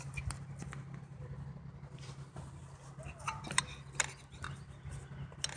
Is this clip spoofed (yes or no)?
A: no